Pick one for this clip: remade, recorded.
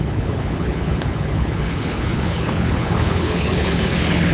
remade